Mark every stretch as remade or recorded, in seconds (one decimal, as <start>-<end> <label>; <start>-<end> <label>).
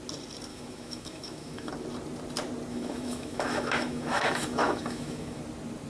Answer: 0.0-0.5 recorded; 0.5-1.7 remade; 1.7-2.7 recorded; 2.7-5.4 remade; 5.4-5.9 recorded